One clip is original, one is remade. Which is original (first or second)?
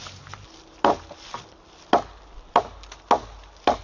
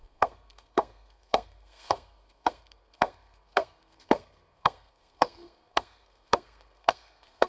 first